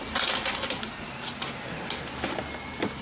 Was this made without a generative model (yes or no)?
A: yes